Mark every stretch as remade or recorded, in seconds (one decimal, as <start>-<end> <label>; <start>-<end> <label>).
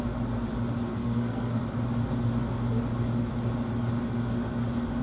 0.0-0.9 recorded; 0.9-1.6 remade; 1.6-5.0 recorded